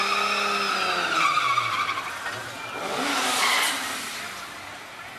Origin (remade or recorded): recorded